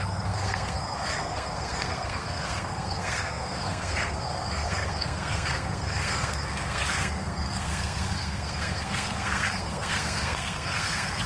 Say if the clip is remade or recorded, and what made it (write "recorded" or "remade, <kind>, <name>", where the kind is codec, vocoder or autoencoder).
remade, codec, SNAC